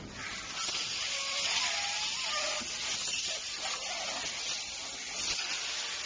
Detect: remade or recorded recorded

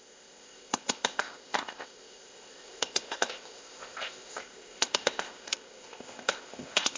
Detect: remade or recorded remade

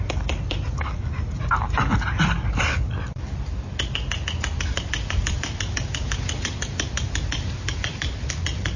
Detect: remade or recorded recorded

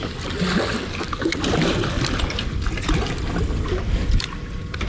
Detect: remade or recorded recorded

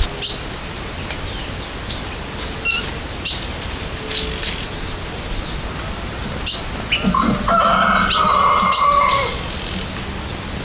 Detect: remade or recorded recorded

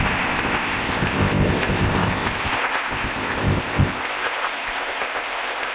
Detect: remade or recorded remade